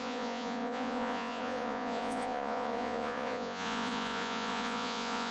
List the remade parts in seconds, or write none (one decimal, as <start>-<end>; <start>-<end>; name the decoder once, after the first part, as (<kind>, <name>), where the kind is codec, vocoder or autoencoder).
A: 0.0-5.3 (vocoder, Vocos)